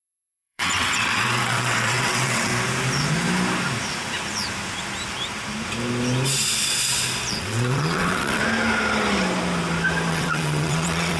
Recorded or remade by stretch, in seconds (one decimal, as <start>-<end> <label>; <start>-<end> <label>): 0.0-2.5 remade; 2.5-7.3 recorded; 7.3-8.4 remade; 8.4-10.1 recorded; 10.1-11.2 remade